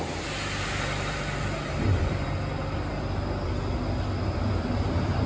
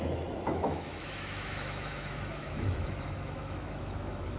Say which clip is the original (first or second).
first